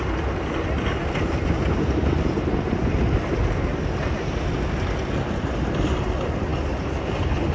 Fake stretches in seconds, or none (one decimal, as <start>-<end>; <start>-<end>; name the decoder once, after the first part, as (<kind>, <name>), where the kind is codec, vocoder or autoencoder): none